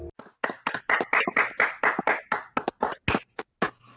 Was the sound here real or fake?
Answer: real